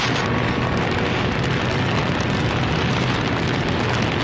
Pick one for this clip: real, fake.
real